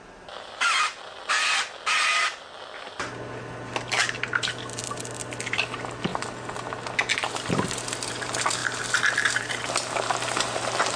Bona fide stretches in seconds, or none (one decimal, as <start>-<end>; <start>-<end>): 0.0-11.0